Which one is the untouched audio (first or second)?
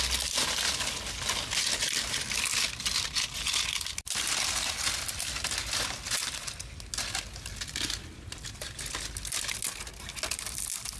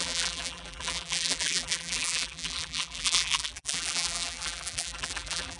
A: first